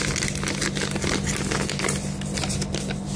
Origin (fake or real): real